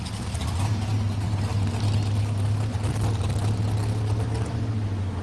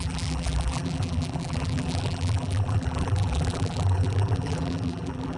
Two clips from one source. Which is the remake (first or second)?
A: second